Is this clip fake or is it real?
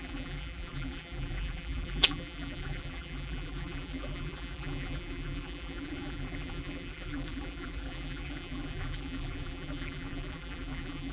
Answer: fake